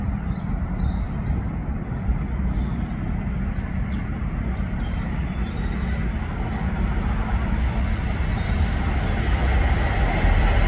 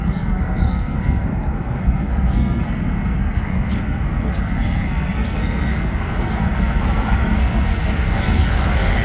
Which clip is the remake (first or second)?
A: second